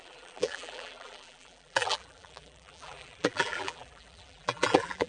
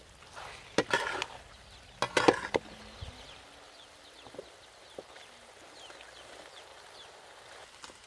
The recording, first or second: second